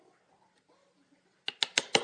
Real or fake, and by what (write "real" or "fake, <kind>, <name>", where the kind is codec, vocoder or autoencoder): real